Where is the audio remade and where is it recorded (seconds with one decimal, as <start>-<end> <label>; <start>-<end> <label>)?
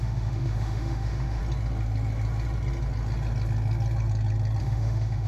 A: 0.0-1.4 remade; 1.4-4.6 recorded; 4.6-5.3 remade